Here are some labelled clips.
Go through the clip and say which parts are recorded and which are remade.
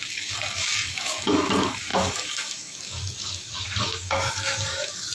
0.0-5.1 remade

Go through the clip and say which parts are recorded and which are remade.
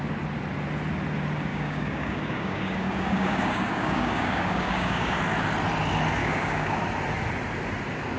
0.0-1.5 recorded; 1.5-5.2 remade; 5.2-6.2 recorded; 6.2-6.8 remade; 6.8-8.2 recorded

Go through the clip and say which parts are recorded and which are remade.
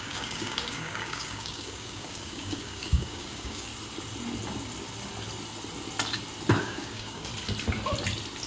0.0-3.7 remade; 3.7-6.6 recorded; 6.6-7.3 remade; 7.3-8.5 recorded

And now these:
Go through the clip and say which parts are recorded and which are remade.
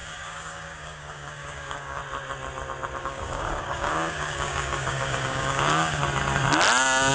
0.0-2.0 remade; 2.0-3.0 recorded; 3.0-6.0 remade; 6.0-7.1 recorded